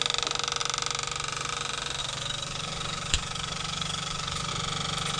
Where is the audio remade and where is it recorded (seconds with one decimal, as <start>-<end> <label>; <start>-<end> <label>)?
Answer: 0.0-2.0 recorded; 2.0-4.5 remade; 4.5-5.2 recorded